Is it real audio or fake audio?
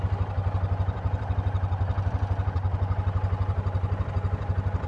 real